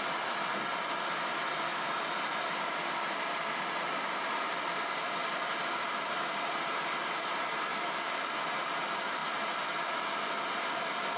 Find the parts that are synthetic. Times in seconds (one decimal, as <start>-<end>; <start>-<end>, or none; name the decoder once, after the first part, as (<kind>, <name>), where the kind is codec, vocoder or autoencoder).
1.7-3.7 (vocoder, BigVGAN v2); 7.7-8.3

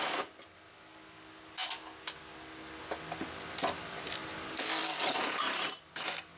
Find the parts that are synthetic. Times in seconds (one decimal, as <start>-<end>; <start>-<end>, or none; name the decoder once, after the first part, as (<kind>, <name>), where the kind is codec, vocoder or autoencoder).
4.8-5.9 (vocoder, BigVGAN v2)